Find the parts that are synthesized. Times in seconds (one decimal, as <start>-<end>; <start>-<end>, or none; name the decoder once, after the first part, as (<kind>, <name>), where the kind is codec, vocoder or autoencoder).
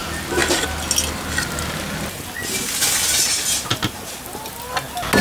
none